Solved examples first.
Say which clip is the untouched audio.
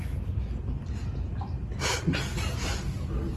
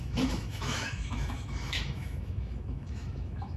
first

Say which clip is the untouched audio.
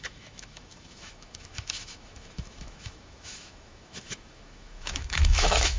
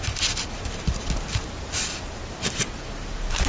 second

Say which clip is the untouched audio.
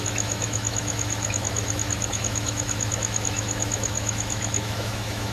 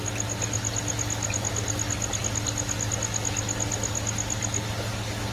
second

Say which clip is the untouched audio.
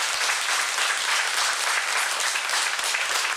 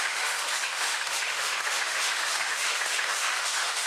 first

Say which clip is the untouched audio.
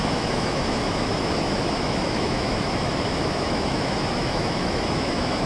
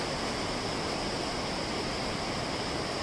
second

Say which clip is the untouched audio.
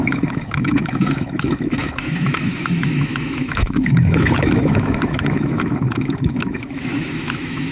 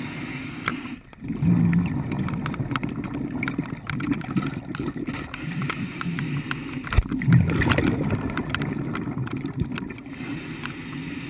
second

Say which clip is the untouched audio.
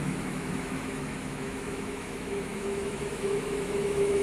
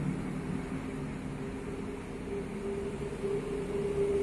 second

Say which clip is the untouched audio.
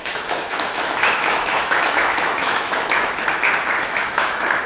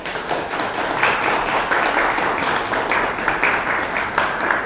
second